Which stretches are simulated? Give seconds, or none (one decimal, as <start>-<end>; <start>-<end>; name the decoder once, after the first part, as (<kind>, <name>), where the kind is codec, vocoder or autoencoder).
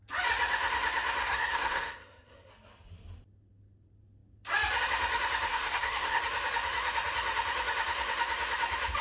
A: 1.2-2.5 (codec, SNAC); 5.5-6.2